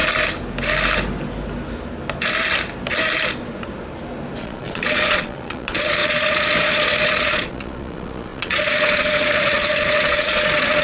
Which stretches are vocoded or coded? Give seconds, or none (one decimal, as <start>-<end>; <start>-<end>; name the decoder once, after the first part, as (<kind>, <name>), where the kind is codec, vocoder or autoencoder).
4.4-10.8 (vocoder, Vocos)